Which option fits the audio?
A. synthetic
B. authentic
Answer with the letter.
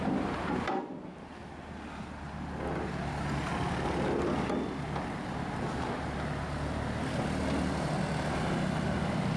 B